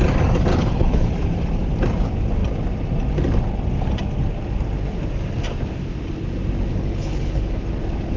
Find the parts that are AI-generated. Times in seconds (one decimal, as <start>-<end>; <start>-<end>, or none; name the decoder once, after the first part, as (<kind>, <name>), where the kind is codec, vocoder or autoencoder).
0.5-1.1 (codec, HILCodec); 6.7-7.6